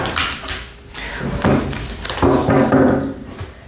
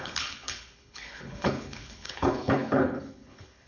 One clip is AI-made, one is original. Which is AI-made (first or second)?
second